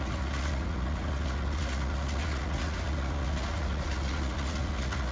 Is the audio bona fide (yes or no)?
no